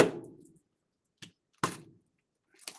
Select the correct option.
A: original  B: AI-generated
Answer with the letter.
A